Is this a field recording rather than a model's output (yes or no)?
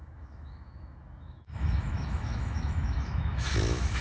no